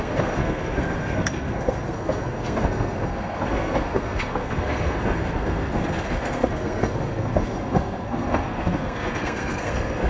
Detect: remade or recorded remade